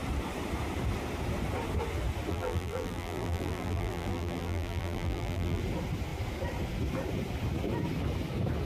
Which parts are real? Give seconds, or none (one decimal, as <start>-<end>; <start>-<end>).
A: 0.0-2.3; 5.6-8.7